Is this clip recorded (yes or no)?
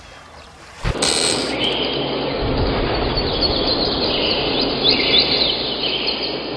no